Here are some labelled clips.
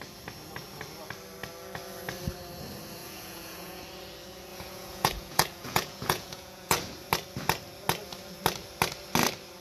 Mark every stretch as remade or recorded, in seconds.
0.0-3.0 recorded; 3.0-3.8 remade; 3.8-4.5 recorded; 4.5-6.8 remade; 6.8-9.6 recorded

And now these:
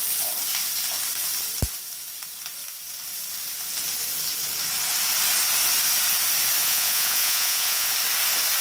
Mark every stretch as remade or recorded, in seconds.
0.0-6.6 recorded; 6.6-7.9 remade; 7.9-8.6 recorded

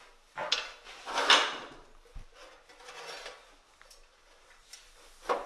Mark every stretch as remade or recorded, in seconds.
0.0-5.5 recorded

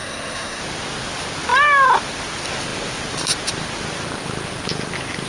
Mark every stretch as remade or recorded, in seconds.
0.0-0.6 remade; 0.6-5.3 recorded

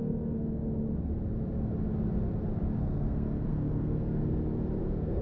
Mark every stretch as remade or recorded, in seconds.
0.0-0.6 remade; 0.6-2.8 recorded; 2.8-4.2 remade; 4.2-4.8 recorded; 4.8-5.2 remade